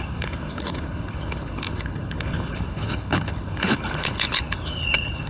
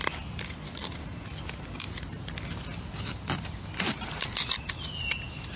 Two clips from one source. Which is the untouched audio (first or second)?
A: second